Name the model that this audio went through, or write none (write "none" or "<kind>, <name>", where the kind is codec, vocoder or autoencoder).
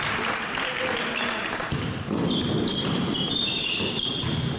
none